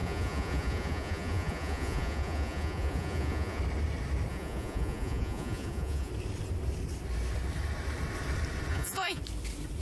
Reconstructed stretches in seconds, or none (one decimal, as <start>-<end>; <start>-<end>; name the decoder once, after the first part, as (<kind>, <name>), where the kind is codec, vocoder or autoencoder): 0.0-3.6 (vocoder, Vocos); 4.3-6.1; 8.7-9.2